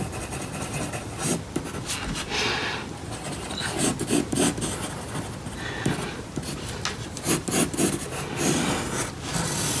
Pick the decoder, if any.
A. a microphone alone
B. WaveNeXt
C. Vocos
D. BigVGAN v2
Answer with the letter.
A